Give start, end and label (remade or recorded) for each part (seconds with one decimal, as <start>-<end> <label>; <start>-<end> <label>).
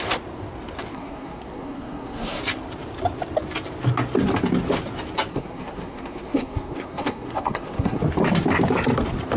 0.0-0.9 recorded; 0.9-2.4 remade; 2.4-5.3 recorded; 5.3-8.0 remade; 8.0-9.4 recorded